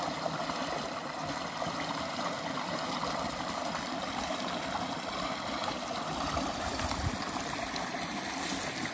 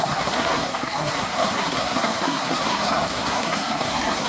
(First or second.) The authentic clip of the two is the first